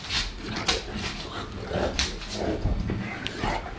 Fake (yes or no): no